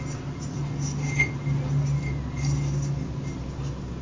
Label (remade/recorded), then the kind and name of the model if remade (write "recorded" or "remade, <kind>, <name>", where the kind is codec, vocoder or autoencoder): recorded